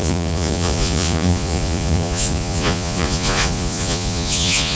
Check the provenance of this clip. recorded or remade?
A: remade